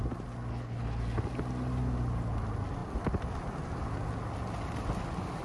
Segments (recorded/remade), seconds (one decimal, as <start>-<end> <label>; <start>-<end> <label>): 0.0-0.5 recorded; 0.5-1.0 remade; 1.0-5.4 recorded